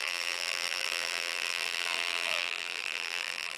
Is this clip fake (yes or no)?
yes